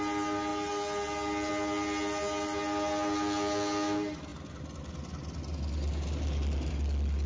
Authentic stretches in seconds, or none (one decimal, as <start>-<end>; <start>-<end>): 0.0-7.3